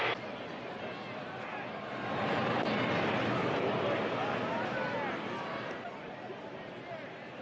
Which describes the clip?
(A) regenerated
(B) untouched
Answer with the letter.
B